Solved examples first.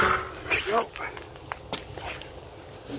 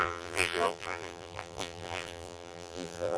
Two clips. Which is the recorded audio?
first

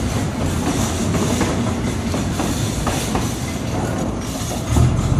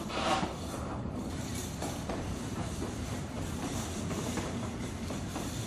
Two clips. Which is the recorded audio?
first